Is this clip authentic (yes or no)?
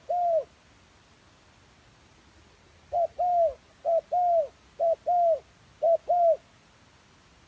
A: yes